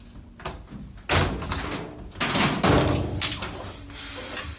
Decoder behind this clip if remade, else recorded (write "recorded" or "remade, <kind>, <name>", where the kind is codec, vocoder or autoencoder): recorded